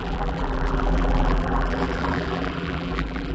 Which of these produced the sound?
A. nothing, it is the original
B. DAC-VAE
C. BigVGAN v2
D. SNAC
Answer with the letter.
C